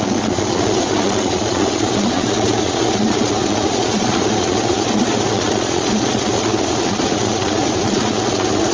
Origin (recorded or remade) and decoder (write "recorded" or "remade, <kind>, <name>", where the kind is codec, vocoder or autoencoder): remade, vocoder, Vocos